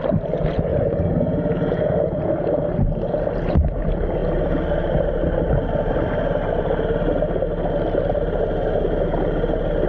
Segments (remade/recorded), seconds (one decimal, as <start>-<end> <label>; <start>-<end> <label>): 0.0-0.7 recorded; 0.7-2.3 remade; 2.3-9.9 recorded